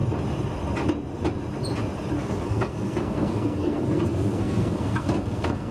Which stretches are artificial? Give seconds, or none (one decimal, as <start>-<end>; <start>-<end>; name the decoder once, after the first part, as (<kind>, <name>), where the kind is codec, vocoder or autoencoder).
2.2-5.7 (codec, SNAC)